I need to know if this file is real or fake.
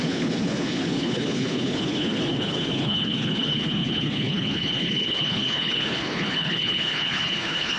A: fake